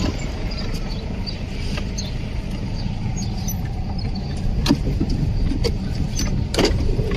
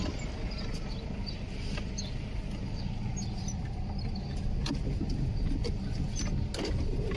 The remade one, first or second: first